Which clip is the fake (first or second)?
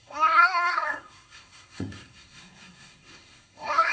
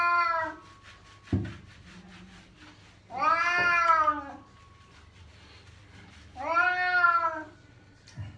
first